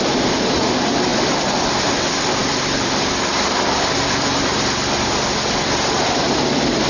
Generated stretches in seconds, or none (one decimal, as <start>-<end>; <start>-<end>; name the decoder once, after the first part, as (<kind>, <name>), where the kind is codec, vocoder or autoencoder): 1.1-1.9 (vocoder, BigVGAN v2); 2.4-4.5; 5.6-6.2